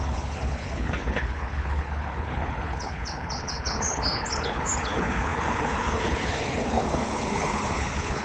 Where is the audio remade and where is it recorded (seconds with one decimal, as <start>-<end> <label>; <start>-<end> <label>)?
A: 0.0-8.2 remade